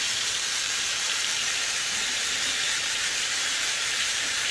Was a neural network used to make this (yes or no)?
yes